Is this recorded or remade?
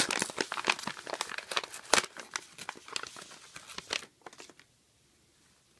recorded